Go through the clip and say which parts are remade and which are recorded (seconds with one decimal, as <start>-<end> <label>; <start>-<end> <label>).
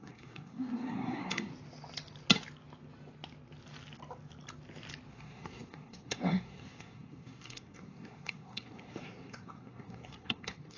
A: 0.0-1.5 remade; 1.5-5.1 recorded; 5.1-10.8 remade